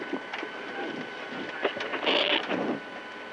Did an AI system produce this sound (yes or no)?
no